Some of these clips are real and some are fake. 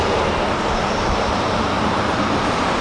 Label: fake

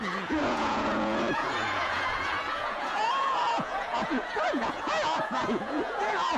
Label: fake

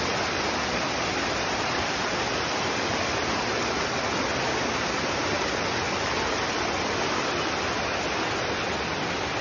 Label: real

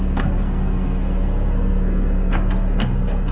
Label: fake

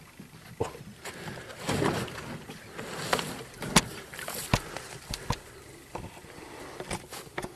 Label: real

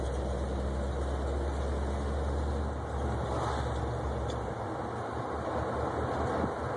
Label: real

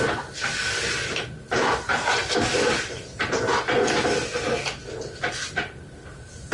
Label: real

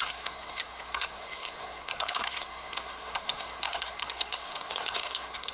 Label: fake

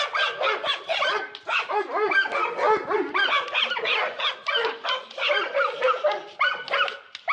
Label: real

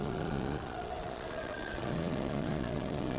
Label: fake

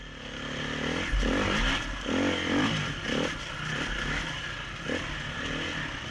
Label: real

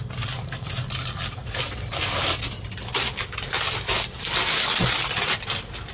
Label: real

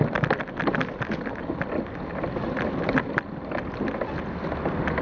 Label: real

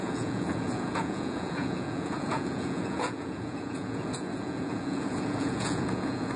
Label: fake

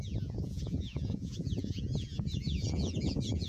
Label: fake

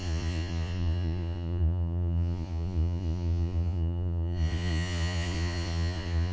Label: fake